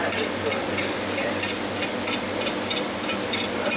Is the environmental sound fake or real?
real